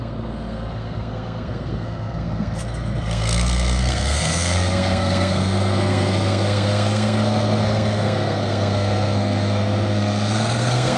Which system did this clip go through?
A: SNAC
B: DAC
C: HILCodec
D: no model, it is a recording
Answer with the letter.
A